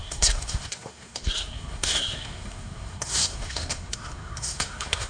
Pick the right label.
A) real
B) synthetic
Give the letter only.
B